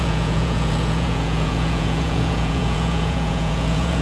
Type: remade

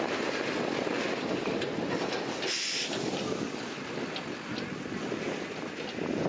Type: recorded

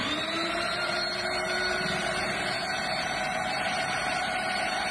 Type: remade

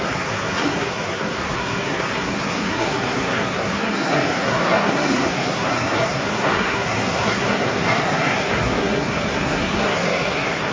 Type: remade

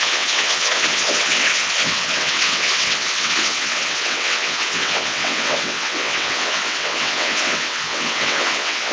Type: remade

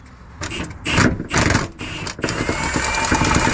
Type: recorded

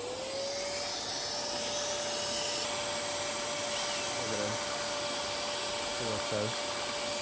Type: recorded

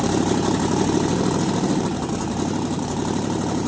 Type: remade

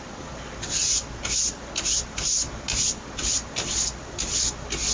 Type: recorded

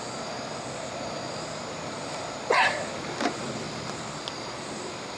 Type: recorded